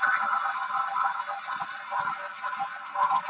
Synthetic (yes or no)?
no